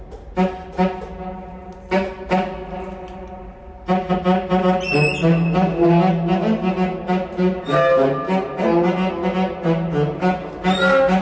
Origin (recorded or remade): recorded